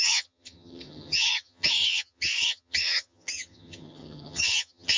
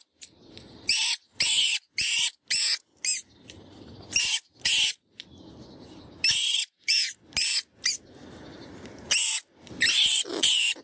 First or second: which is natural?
second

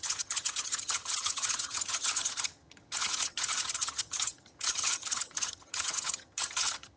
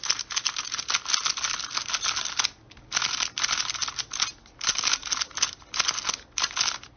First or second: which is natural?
second